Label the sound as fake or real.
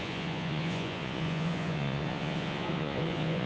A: fake